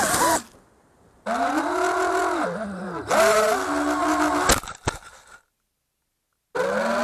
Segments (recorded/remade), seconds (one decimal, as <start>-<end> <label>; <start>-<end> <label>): 0.0-7.0 recorded